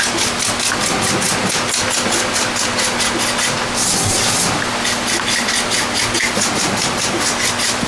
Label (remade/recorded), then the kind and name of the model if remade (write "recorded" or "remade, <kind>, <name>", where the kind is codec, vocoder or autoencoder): recorded